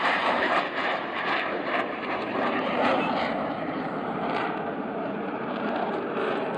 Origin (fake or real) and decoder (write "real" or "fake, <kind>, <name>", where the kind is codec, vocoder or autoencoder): fake, vocoder, BigVGAN v2